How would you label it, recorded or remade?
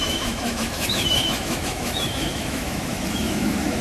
remade